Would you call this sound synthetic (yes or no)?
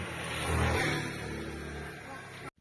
no